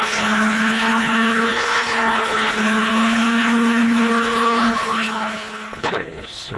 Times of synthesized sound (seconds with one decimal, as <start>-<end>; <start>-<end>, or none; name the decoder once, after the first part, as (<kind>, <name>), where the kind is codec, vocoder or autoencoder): 0.0-6.6 (codec, HILCodec)